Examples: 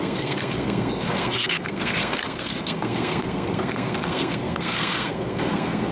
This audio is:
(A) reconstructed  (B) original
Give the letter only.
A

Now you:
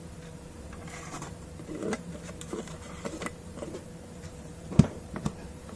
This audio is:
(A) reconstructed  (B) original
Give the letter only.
A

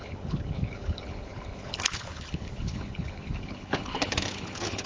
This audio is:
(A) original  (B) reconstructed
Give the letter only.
B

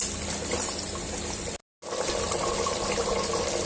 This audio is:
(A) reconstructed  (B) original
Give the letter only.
B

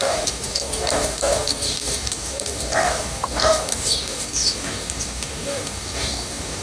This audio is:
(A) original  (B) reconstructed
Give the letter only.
B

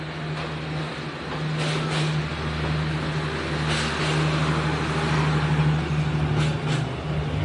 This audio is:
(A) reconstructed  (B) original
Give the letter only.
B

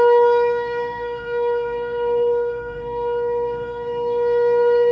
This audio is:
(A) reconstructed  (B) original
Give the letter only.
A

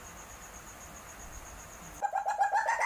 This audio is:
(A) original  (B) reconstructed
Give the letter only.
A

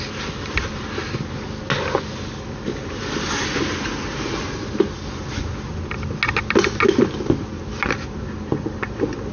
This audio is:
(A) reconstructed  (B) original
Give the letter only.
B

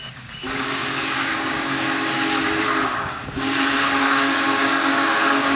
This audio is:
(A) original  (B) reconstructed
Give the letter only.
B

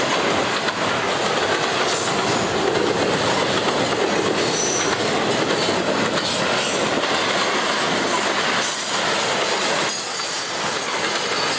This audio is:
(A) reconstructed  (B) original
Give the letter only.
B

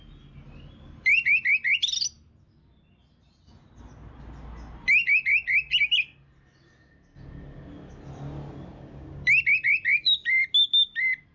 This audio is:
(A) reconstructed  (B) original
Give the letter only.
B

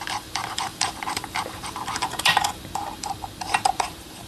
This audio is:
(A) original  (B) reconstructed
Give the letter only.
B